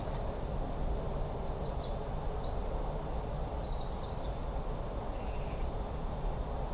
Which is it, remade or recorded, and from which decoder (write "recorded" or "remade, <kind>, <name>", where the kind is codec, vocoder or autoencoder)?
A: recorded